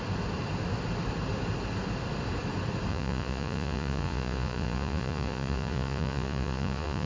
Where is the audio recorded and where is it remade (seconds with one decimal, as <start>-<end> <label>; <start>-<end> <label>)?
0.0-2.9 recorded; 2.9-7.1 remade